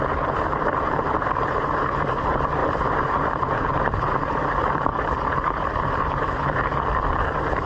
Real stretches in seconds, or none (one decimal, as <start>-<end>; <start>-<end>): 6.7-7.3